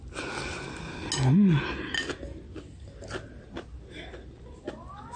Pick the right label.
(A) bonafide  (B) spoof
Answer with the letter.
A